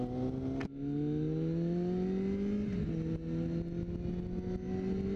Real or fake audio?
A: real